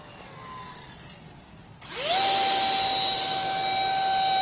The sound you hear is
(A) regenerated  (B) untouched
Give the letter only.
B